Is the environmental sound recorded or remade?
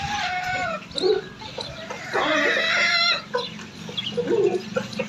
recorded